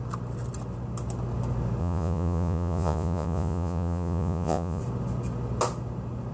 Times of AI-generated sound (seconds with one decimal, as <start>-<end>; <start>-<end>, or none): 1.8-4.8